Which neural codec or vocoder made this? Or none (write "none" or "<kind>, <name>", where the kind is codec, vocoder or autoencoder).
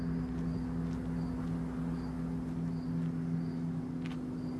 none